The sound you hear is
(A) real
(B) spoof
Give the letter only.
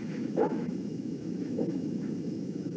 B